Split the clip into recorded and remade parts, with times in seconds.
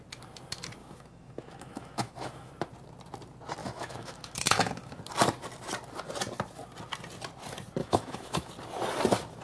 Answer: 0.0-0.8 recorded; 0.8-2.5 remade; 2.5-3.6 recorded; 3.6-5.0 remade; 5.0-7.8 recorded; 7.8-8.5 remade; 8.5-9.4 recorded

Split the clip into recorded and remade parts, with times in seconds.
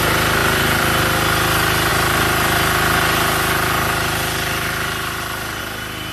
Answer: 0.0-0.4 recorded; 0.4-1.0 remade; 1.0-1.9 recorded; 1.9-5.6 remade; 5.6-6.1 recorded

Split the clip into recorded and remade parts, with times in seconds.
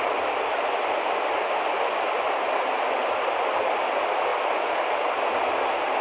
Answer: 0.0-6.0 recorded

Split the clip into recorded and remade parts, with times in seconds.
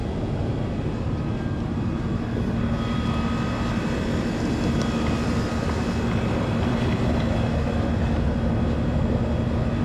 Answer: 0.0-9.8 recorded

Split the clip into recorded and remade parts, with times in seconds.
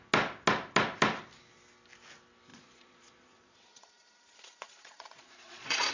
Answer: 0.0-2.5 recorded; 2.5-5.9 remade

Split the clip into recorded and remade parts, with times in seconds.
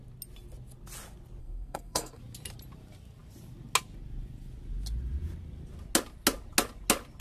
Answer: 0.0-1.4 recorded; 1.4-2.2 remade; 2.2-7.2 recorded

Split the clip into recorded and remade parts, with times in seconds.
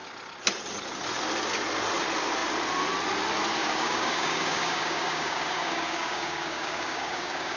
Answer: 0.0-3.6 recorded; 3.6-7.6 remade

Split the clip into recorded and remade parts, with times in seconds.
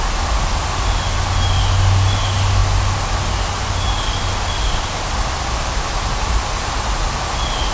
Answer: 0.0-7.7 recorded